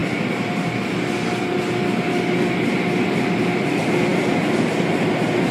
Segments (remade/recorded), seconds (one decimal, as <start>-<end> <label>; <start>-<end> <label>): 0.0-5.5 recorded